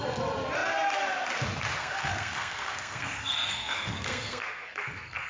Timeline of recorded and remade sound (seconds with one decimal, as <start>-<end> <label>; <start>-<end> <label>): 0.0-1.8 recorded; 1.8-5.3 remade